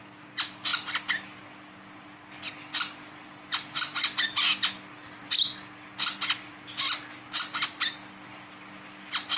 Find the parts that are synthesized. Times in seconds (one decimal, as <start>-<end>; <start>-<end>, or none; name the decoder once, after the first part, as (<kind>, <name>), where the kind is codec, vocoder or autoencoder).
none